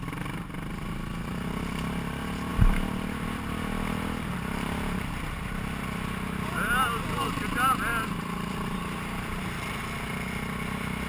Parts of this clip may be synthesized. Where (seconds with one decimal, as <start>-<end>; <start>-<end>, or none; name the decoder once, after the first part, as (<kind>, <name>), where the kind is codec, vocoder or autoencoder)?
2.5-6.8 (vocoder, BigVGAN v2); 7.9-9.8